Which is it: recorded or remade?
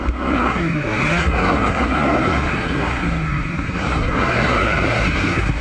remade